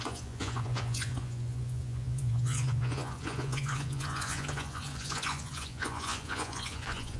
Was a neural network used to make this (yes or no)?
yes